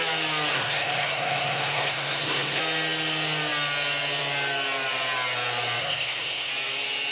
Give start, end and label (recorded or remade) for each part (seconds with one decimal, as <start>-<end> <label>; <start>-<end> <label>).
0.0-0.5 recorded; 0.5-2.6 remade; 2.6-5.8 recorded; 5.8-6.5 remade; 6.5-7.1 recorded